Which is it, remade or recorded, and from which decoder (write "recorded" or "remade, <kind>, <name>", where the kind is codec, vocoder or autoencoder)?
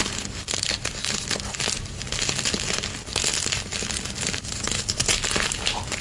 recorded